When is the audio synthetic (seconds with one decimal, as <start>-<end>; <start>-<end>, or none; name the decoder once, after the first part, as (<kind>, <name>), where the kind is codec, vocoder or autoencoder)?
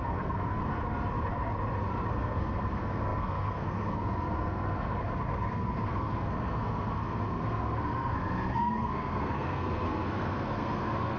0.0-0.6 (codec, SNAC); 2.1-11.2